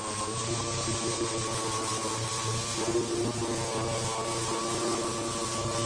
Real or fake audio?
real